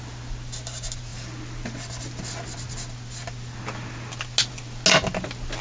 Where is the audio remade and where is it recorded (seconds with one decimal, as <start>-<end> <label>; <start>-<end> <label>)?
0.0-5.6 recorded